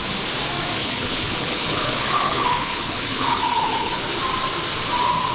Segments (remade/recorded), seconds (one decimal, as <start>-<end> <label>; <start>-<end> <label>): 0.0-0.8 recorded; 0.8-4.0 remade; 4.0-5.3 recorded